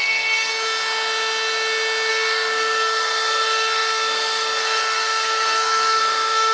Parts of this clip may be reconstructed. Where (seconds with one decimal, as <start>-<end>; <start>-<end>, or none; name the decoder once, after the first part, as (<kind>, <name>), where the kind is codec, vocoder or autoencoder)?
0.0-0.5 (codec, SNAC); 2.1-6.5